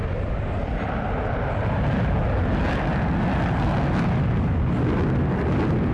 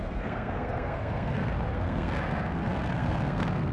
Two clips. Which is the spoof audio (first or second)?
second